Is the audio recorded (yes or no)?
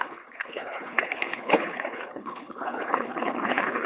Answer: no